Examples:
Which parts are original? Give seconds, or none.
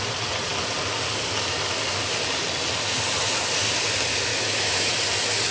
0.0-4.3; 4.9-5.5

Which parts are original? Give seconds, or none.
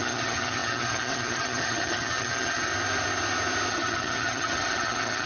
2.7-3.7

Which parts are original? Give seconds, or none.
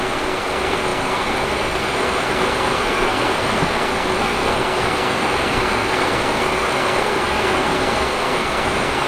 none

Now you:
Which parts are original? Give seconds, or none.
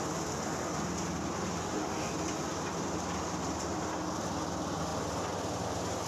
0.0-1.6; 2.1-6.1